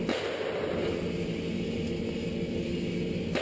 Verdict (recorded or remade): recorded